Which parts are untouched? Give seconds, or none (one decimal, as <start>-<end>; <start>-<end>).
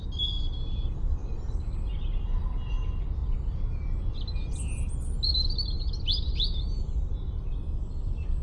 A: 0.0-8.4